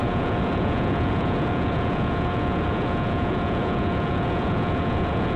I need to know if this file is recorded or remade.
remade